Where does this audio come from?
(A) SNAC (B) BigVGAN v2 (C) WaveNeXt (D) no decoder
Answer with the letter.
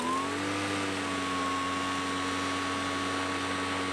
D